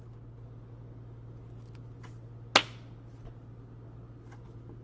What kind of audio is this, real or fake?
real